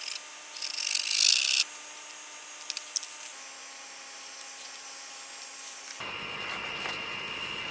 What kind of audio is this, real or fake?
real